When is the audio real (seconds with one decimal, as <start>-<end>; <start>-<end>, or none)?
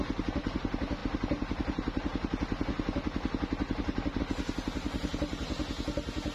0.0-6.3